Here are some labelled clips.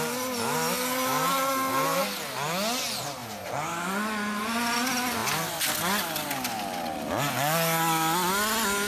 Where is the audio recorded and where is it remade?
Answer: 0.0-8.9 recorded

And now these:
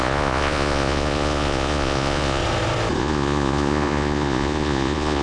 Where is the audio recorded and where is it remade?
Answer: 0.0-2.4 remade; 2.4-3.0 recorded; 3.0-5.2 remade

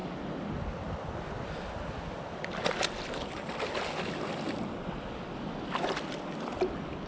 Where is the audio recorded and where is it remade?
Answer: 0.0-7.1 recorded

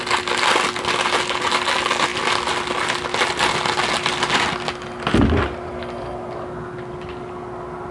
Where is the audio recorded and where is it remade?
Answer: 0.0-7.9 recorded

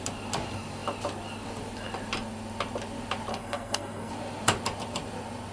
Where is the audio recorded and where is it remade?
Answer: 0.0-3.3 recorded; 3.3-4.1 remade; 4.1-5.5 recorded

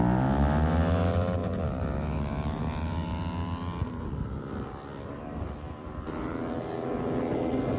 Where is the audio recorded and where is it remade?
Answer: 0.0-7.8 recorded

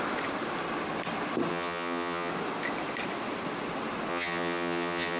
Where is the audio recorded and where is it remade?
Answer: 0.0-1.5 recorded; 1.5-2.3 remade; 2.3-4.1 recorded; 4.1-5.2 remade